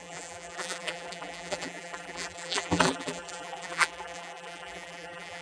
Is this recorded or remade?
remade